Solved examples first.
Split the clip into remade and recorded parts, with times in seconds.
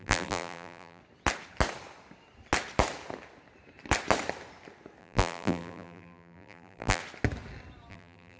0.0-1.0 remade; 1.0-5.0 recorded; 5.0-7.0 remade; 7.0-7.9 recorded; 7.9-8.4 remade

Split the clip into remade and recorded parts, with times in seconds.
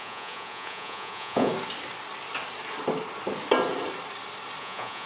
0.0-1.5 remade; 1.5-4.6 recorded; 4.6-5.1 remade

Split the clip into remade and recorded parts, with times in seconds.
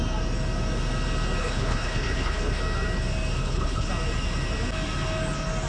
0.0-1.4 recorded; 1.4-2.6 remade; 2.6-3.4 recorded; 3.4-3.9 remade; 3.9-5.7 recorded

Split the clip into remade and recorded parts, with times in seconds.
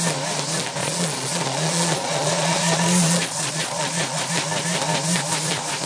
0.0-0.8 recorded; 0.8-4.3 remade; 4.3-5.9 recorded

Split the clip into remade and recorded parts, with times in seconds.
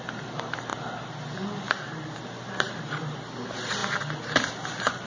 0.0-0.7 remade; 0.7-2.8 recorded; 2.8-5.1 remade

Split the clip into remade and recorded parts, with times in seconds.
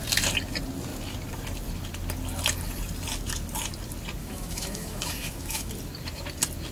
0.0-4.2 recorded; 4.2-5.7 remade; 5.7-6.7 recorded